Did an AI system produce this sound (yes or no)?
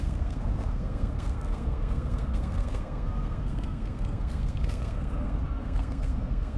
yes